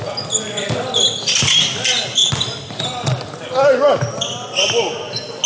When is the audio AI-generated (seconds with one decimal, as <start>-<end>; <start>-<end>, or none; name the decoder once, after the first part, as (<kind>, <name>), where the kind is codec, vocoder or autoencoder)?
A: none